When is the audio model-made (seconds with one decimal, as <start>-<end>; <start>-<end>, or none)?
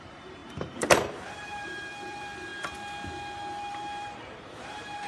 0.0-2.5; 3.7-5.1